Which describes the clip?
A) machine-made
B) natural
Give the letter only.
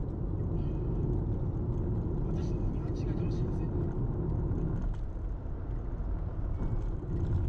B